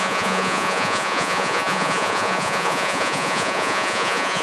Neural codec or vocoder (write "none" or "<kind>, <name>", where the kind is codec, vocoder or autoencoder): vocoder, Vocos